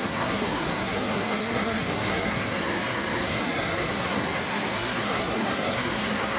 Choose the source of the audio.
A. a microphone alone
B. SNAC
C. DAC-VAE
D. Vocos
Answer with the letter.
B